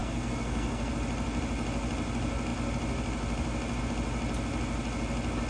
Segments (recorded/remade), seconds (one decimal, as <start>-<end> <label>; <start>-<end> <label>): 0.0-0.9 remade; 0.9-5.5 recorded